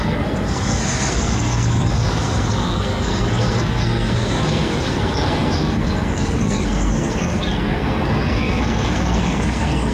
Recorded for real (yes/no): no